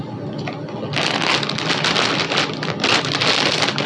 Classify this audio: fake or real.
real